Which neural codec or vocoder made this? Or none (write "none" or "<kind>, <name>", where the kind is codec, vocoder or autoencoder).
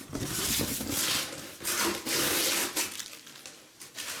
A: none